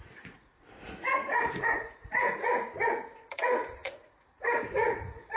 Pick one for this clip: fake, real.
fake